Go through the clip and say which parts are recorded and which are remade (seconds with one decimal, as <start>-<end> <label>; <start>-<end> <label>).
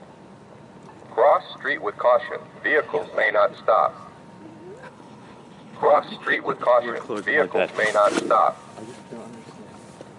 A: 0.0-2.9 recorded; 2.9-3.4 remade; 3.4-4.8 recorded; 4.8-6.6 remade; 6.6-10.2 recorded